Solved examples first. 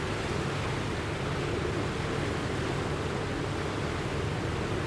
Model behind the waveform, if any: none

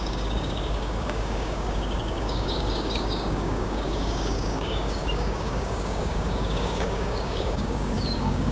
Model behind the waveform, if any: codec, DAC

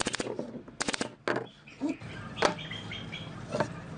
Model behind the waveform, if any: none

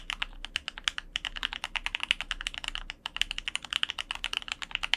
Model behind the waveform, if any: none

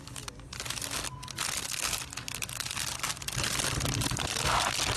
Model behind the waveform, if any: none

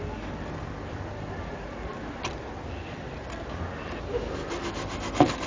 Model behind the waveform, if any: none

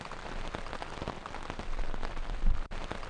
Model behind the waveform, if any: none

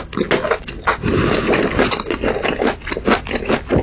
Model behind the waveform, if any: none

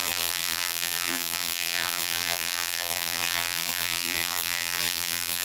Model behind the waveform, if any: vocoder, BigVGAN v2